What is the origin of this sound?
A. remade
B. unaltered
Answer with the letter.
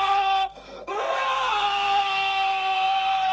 A